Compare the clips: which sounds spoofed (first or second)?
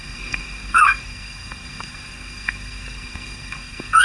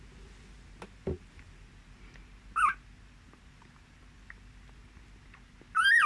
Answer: first